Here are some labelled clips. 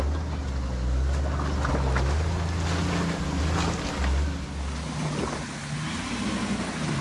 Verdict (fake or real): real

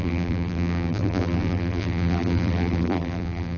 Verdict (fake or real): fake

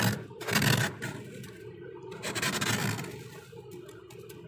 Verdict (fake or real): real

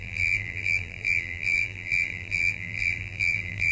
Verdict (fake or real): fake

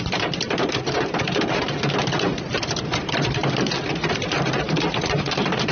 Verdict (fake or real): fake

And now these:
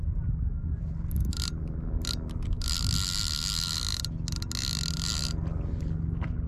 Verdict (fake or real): real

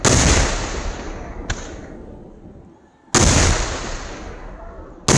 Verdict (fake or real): real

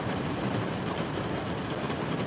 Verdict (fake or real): real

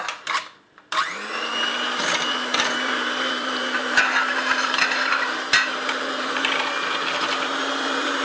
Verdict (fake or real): fake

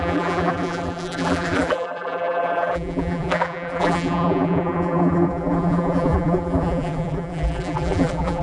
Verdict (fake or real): fake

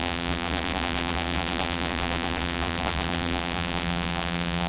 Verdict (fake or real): fake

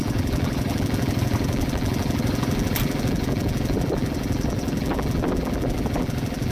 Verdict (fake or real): fake